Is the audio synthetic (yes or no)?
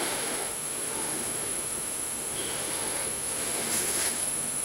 yes